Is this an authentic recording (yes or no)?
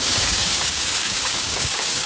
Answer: no